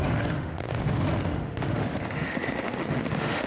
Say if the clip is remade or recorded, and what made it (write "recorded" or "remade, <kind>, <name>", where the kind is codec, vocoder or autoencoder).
remade, autoencoder, DAC-VAE